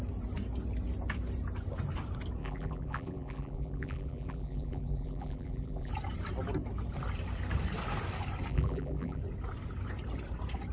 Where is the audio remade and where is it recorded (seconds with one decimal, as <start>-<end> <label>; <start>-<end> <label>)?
0.0-2.4 recorded; 2.4-5.9 remade; 5.9-8.5 recorded; 8.5-9.2 remade; 9.2-10.7 recorded